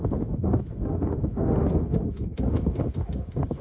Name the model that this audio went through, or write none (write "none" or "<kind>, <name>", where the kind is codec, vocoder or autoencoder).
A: autoencoder, DAC-VAE